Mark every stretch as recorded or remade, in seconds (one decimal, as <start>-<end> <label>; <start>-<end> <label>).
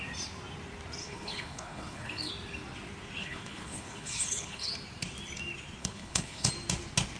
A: 0.0-1.0 recorded; 1.0-2.3 remade; 2.3-3.2 recorded; 3.2-4.7 remade; 4.7-5.8 recorded; 5.8-6.5 remade; 6.5-7.2 recorded